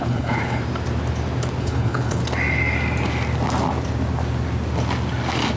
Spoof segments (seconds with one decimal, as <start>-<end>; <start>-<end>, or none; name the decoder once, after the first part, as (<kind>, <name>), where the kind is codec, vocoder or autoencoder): 0.0-0.6 (codec, HILCodec); 1.6-2.2